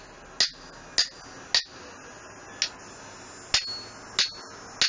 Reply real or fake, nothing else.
real